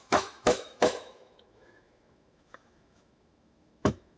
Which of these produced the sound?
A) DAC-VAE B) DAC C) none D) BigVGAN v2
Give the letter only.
A